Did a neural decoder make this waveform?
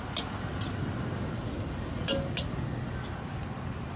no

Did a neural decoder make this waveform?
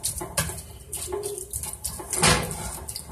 no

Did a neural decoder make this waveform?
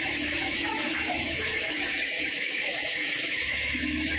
yes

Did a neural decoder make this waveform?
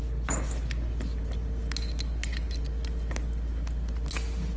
no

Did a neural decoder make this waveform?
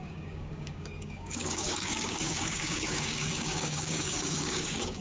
yes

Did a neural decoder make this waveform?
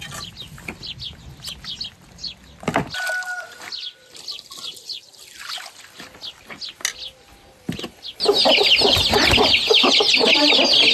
no